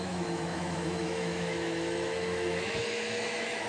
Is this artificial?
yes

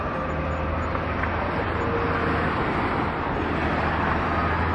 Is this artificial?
no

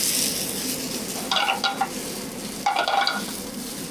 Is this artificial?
no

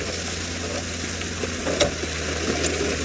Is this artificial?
no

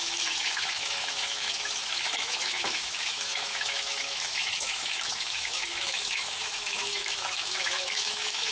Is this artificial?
yes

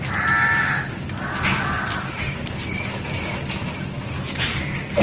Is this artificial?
no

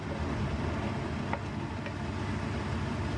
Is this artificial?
no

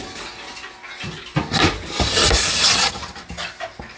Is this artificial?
no